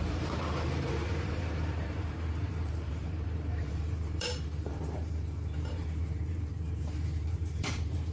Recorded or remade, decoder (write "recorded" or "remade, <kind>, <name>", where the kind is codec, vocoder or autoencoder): remade, vocoder, BigVGAN v2